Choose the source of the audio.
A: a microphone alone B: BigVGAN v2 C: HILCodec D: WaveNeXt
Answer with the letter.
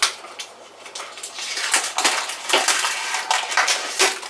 A